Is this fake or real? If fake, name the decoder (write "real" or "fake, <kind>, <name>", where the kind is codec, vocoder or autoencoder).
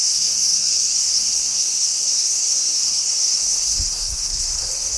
fake, codec, SNAC